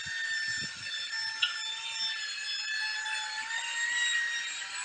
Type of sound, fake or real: real